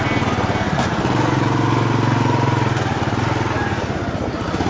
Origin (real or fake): real